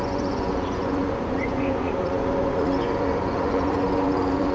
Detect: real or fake fake